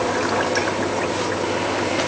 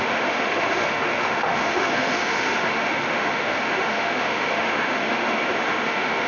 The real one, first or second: first